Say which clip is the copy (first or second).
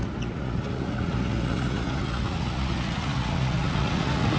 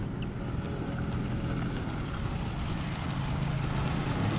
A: first